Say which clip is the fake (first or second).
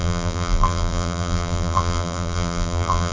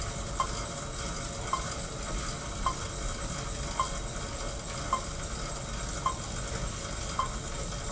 first